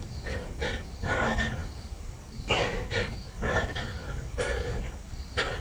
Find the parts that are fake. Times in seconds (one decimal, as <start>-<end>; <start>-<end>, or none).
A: 0.0-5.6